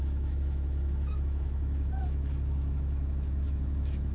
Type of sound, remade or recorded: remade